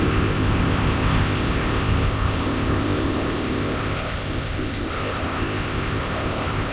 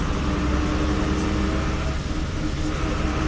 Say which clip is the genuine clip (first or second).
second